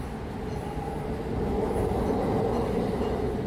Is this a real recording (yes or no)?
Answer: yes